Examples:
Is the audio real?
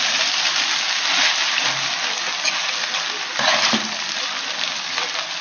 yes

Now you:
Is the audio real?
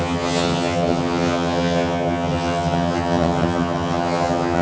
no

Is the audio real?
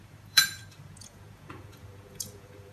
no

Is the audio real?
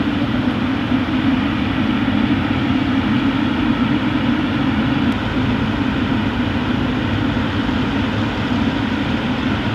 yes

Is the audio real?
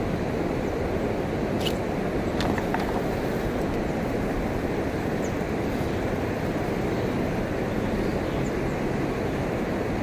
yes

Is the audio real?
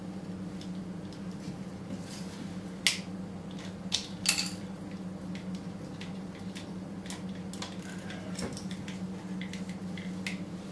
yes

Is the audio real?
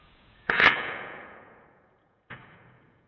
no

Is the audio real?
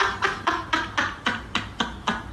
yes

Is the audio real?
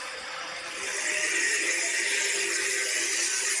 yes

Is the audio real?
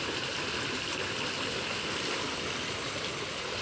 yes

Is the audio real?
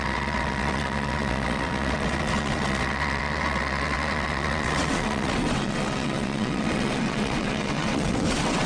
no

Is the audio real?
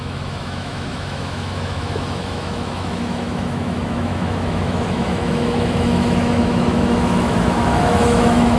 no